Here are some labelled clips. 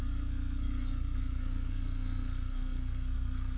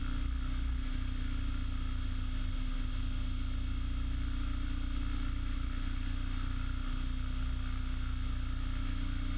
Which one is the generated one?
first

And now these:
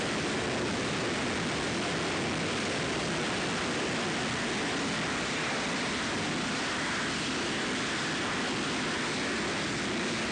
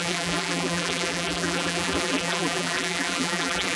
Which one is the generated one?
second